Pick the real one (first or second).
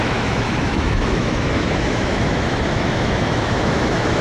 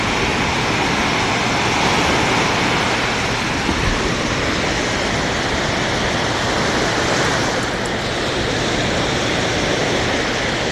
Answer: second